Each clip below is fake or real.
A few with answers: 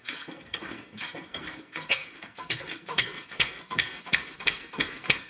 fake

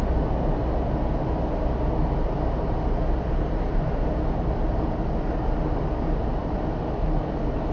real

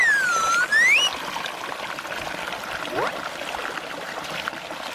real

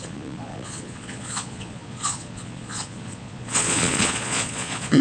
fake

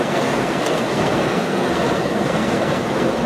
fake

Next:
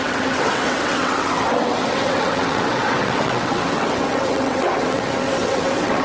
fake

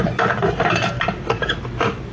real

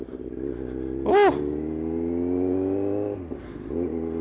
real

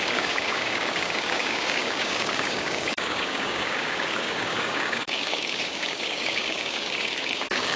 fake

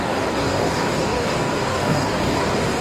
fake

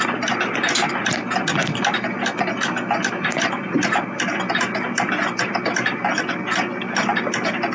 real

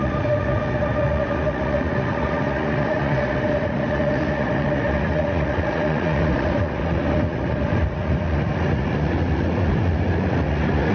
fake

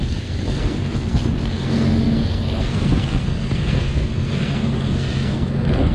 fake